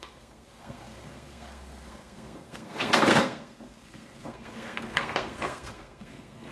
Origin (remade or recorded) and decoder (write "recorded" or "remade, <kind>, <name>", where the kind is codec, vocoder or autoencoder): remade, codec, SNAC